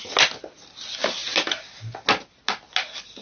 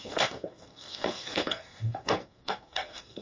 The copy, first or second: second